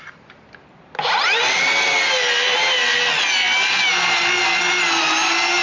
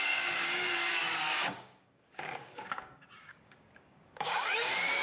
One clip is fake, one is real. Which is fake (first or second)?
second